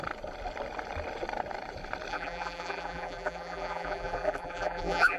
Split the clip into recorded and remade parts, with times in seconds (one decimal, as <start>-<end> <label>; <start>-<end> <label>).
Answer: 0.0-2.1 recorded; 2.1-5.2 remade